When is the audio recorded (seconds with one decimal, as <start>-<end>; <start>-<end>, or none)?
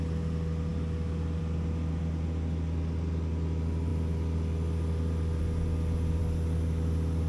0.0-7.3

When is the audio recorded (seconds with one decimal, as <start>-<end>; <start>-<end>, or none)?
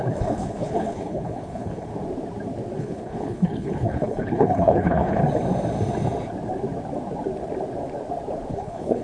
1.9-2.8; 5.2-8.5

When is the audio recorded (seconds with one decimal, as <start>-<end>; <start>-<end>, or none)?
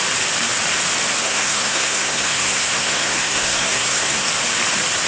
0.0-1.2; 4.3-5.1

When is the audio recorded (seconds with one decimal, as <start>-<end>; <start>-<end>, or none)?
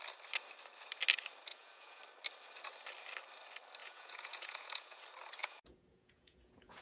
0.0-1.5; 2.0-3.8; 5.0-5.4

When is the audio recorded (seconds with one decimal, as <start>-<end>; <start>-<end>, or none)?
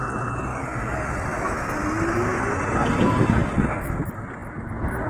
0.0-0.5; 1.1-5.1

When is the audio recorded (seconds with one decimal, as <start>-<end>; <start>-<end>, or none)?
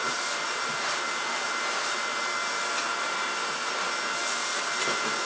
1.0-5.2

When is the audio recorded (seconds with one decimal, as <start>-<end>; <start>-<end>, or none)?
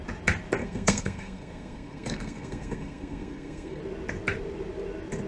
0.0-0.6; 3.8-5.3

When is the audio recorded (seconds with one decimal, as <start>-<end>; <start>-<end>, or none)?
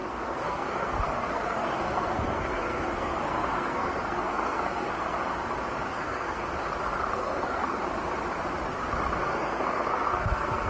5.3-5.9; 6.4-7.1; 7.8-9.2